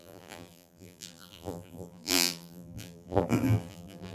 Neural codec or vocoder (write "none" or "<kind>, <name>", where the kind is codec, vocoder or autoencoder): vocoder, BigVGAN v2